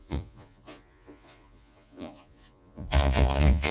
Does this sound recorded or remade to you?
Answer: remade